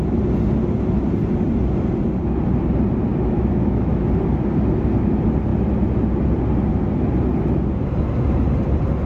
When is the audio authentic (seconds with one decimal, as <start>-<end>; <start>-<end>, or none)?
0.0-3.1; 4.0-9.1